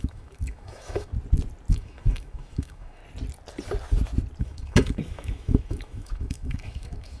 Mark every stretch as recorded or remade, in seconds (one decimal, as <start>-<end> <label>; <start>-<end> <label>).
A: 0.0-1.1 remade; 1.1-1.7 recorded; 1.7-3.0 remade; 3.0-4.4 recorded; 4.4-7.2 remade